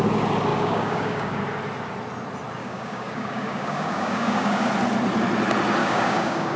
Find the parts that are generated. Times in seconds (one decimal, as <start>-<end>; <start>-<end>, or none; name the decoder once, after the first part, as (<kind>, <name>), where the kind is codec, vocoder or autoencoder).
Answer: 0.5-1.4 (codec, DAC); 2.6-4.7; 5.8-6.6